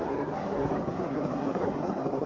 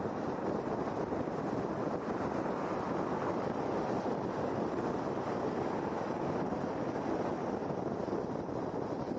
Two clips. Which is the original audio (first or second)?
second